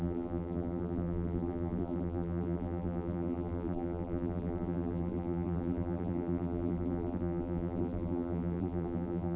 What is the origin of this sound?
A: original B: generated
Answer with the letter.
B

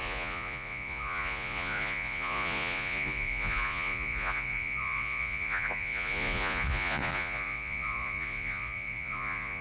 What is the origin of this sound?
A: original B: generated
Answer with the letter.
B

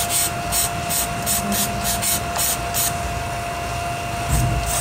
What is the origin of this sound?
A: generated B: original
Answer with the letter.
B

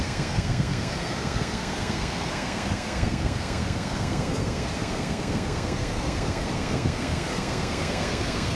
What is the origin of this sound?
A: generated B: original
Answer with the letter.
A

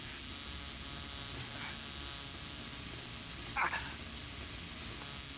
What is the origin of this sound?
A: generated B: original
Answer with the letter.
B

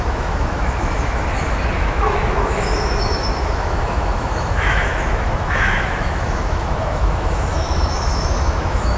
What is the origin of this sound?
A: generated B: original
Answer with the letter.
A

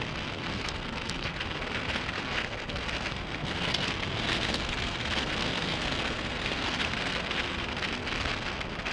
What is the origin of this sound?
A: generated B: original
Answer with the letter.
A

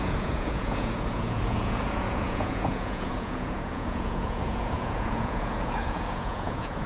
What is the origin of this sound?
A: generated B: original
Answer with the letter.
A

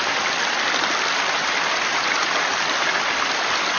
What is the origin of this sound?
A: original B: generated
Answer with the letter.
A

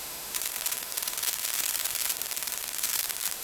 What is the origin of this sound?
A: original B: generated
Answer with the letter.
B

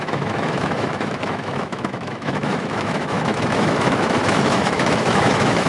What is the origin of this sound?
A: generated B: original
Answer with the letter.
A